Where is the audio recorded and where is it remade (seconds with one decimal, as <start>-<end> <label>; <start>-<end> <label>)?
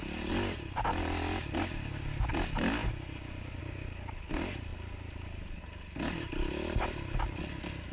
0.0-7.9 recorded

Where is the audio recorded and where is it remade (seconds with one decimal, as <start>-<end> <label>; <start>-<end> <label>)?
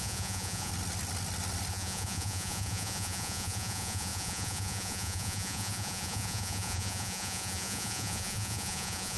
0.0-0.7 remade; 0.7-1.7 recorded; 1.7-9.2 remade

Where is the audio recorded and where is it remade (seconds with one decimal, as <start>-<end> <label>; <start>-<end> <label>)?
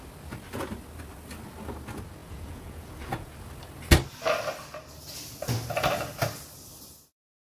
0.0-2.2 recorded; 2.2-3.3 remade; 3.3-7.4 recorded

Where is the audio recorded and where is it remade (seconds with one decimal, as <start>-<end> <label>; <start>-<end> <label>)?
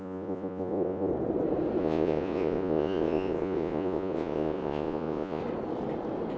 0.0-1.1 remade; 1.1-1.8 recorded; 1.8-5.4 remade; 5.4-6.4 recorded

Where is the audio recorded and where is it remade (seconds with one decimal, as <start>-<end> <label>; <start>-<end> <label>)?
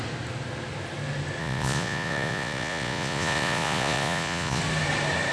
0.0-1.4 recorded; 1.4-4.6 remade; 4.6-5.3 recorded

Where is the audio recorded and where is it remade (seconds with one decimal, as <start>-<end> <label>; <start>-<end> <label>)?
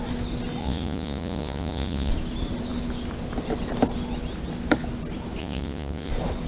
0.0-0.6 recorded; 0.6-2.1 remade; 2.1-5.4 recorded; 5.4-6.1 remade; 6.1-6.5 recorded